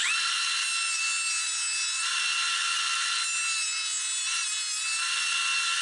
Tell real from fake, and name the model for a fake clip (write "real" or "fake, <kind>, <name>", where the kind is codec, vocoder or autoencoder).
real